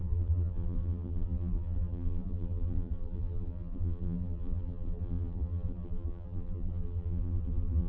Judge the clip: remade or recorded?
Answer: remade